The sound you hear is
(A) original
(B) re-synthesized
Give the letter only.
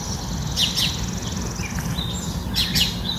A